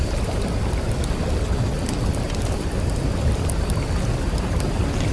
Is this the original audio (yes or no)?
yes